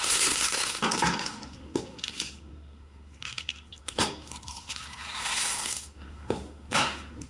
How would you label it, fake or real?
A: fake